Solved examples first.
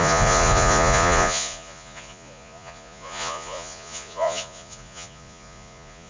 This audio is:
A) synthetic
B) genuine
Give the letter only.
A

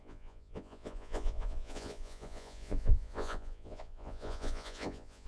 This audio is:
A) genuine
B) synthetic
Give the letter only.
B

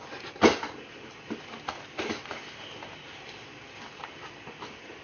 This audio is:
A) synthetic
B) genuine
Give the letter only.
B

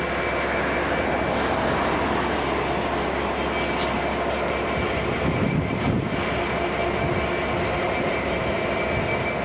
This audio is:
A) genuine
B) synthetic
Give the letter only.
A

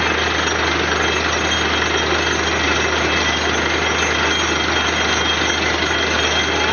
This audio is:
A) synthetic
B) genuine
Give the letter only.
B